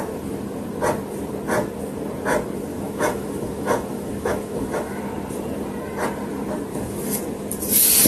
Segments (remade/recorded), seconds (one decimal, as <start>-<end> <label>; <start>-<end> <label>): 0.0-2.7 recorded; 2.7-5.0 remade; 5.0-6.7 recorded; 6.7-7.2 remade; 7.2-8.1 recorded